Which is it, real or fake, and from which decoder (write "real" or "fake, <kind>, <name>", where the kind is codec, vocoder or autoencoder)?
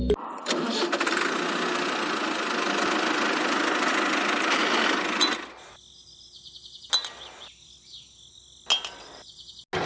real